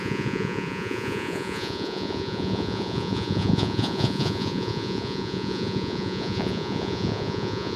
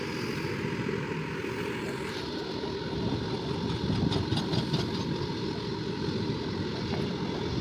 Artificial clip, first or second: first